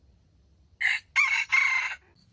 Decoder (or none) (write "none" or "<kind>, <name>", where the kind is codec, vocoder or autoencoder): none